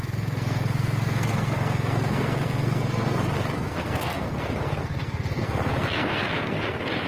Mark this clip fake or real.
fake